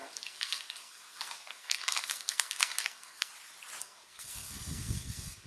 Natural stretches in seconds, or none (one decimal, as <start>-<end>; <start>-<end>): 3.3-3.8